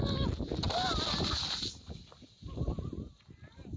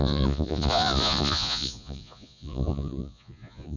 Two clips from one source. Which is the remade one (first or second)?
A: second